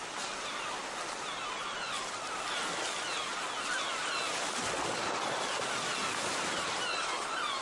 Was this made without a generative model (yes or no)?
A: yes